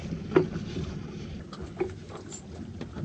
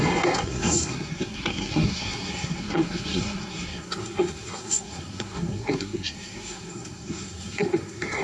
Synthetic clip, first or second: second